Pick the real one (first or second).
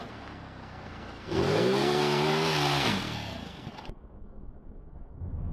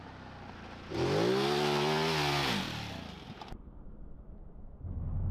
second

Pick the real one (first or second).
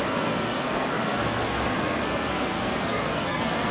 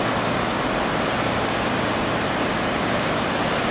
second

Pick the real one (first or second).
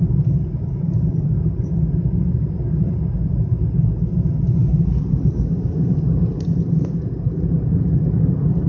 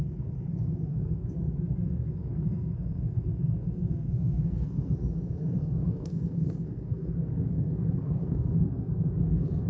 first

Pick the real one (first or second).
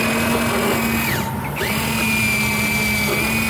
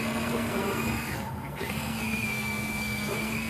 first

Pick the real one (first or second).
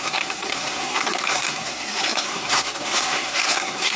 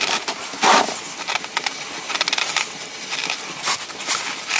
second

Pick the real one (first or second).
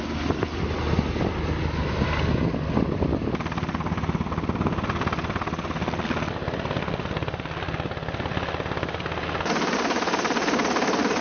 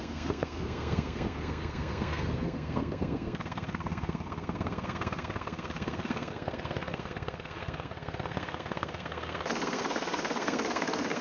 first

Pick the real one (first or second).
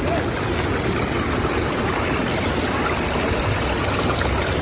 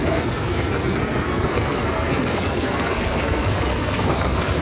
first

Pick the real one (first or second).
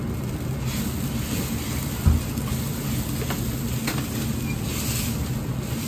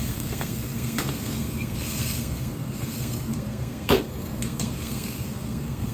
first